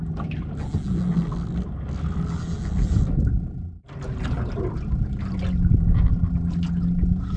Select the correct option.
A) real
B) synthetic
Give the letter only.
A